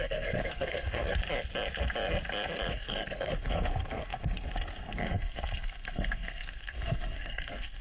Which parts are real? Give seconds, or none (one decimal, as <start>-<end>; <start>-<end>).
1.2-2.7